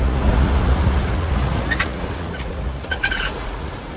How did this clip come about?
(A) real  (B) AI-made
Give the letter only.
B